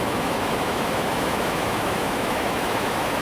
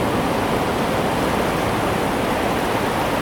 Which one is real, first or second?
second